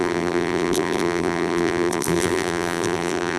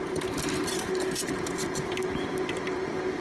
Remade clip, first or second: first